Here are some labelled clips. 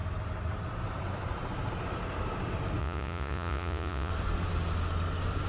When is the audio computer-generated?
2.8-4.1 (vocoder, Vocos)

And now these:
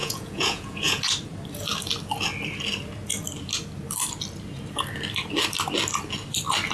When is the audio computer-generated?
0.0-1.0 (vocoder, Vocos)

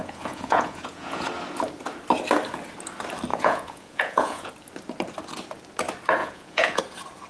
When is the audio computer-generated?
0.0-1.2 (vocoder, Vocos); 3.3-4.5; 6.2-6.8

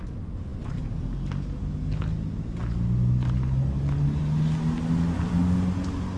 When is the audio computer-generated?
none

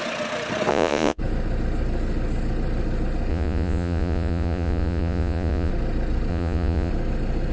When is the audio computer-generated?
0.7-1.2 (vocoder, Vocos); 3.3-5.7; 6.3-6.9

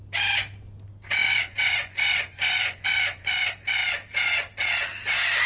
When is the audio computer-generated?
1.2-3.3 (vocoder, Vocos)